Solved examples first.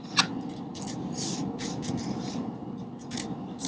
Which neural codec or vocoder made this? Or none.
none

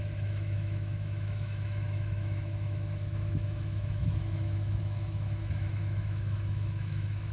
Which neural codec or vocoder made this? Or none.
autoencoder, DAC-VAE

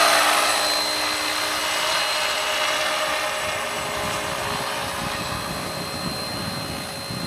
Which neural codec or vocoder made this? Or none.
none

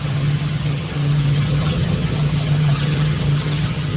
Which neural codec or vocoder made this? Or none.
vocoder, HiFi-GAN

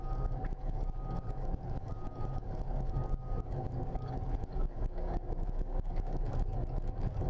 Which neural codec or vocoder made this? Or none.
codec, DAC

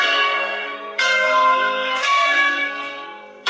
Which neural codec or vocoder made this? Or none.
codec, SNAC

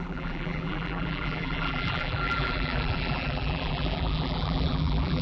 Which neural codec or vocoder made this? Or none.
vocoder, BigVGAN v2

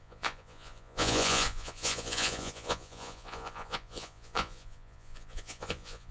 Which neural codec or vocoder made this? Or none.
vocoder, Vocos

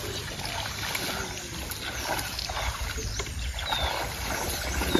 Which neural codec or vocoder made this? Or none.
none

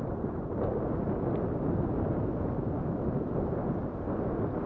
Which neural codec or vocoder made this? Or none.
none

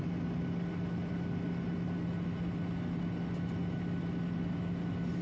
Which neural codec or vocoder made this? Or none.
none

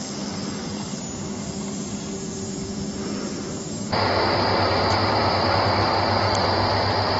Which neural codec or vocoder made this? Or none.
none